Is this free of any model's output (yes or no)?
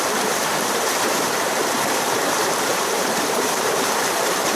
no